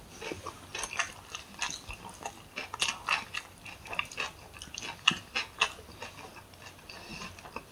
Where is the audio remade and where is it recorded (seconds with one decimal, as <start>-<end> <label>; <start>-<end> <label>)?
0.0-7.7 recorded